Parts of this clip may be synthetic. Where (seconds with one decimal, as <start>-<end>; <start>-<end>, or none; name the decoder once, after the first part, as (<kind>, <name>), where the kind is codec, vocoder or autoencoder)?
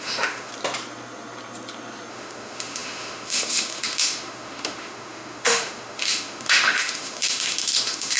0.0-0.5 (autoencoder, DAC-VAE); 2.1-8.2